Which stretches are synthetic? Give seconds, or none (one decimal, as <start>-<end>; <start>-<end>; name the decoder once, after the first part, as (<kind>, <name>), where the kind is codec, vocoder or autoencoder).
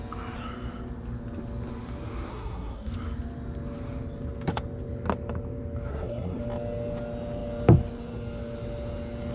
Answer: 2.3-2.9 (codec, SNAC); 5.9-6.4